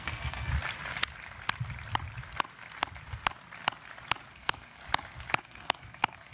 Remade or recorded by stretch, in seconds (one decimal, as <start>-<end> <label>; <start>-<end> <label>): 0.0-0.5 remade; 0.5-4.3 recorded; 4.3-4.8 remade; 4.8-5.4 recorded; 5.4-6.3 remade